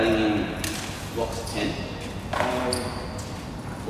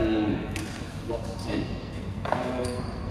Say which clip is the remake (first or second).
second